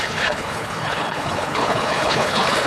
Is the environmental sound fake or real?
fake